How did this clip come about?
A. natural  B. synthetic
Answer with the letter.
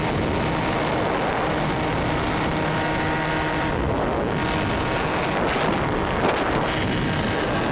A